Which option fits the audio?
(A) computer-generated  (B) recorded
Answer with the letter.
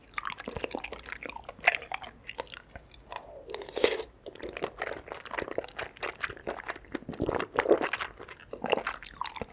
B